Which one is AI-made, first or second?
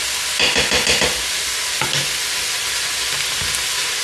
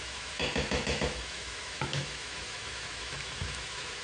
second